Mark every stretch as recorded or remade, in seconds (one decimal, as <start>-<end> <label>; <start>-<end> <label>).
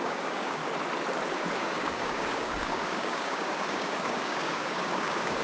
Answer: 0.0-0.6 remade; 0.6-1.6 recorded; 1.6-5.4 remade